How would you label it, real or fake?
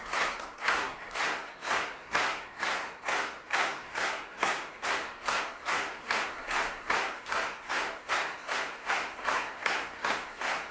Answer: fake